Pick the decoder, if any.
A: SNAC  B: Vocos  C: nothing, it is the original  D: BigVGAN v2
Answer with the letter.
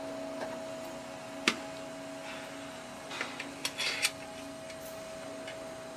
C